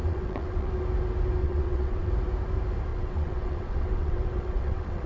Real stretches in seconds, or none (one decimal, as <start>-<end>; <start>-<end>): 0.7-1.4; 2.1-2.9